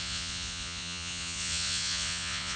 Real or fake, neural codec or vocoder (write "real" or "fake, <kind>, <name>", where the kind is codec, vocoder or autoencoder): fake, vocoder, Vocos